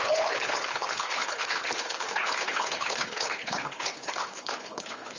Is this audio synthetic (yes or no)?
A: yes